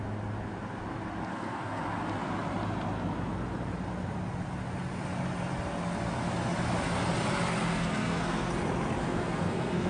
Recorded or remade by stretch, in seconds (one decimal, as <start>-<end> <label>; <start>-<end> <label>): 0.0-1.3 recorded; 1.3-1.8 remade; 1.8-7.7 recorded; 7.7-8.5 remade; 8.5-9.0 recorded; 9.0-9.9 remade